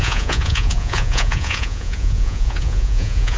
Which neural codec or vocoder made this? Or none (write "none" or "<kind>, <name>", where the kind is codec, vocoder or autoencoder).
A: vocoder, Vocos